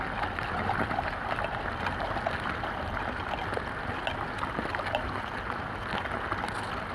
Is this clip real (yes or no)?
yes